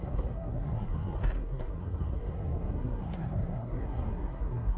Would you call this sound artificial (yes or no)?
yes